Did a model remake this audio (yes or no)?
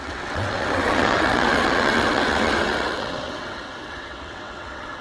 yes